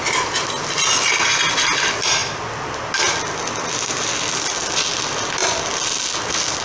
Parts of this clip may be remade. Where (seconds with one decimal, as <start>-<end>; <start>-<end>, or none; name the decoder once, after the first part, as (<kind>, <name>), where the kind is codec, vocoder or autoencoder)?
none